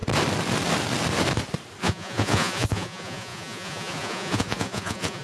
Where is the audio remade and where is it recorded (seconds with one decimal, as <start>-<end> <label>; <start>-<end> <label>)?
0.0-1.8 recorded; 1.8-5.2 remade